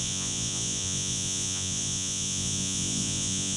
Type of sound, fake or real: fake